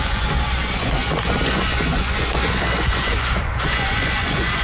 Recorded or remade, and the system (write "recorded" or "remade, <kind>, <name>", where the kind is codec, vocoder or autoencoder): remade, vocoder, Vocos